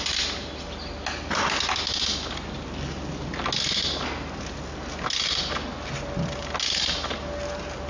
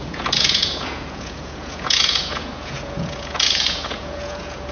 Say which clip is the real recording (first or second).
first